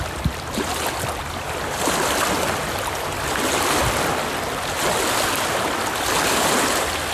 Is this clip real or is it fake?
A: real